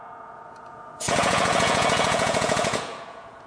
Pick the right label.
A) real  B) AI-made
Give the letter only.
B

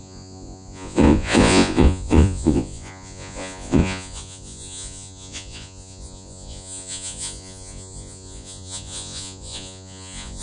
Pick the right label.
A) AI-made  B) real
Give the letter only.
A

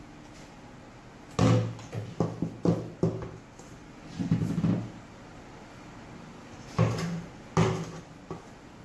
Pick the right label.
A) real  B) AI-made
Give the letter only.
A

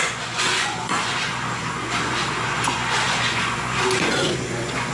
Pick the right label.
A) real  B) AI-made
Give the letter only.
B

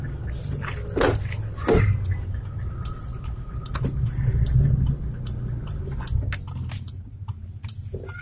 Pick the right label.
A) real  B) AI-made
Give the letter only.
A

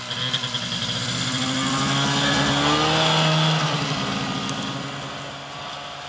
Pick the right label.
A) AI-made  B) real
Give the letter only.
B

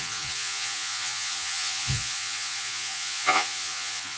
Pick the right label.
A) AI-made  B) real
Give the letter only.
A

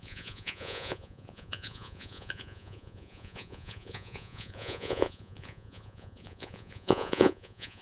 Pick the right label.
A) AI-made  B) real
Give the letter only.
A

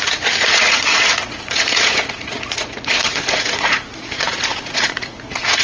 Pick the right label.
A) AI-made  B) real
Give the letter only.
A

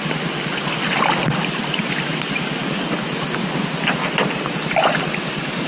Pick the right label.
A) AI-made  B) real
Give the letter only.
B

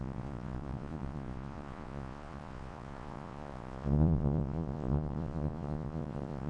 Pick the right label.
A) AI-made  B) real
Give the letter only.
A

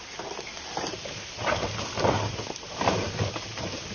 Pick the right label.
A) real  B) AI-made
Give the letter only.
A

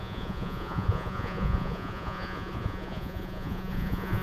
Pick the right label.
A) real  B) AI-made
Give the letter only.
B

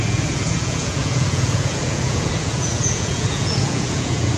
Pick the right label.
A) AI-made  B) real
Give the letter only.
A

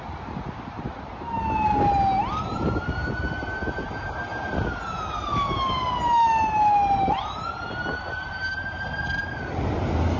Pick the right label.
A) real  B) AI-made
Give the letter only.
A